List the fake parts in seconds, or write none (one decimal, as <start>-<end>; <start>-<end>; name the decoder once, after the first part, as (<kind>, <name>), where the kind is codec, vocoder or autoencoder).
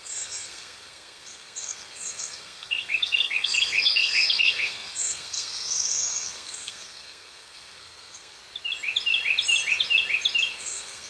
0.0-8.4 (codec, SNAC); 10.5-11.1